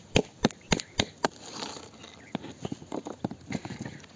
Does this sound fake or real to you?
real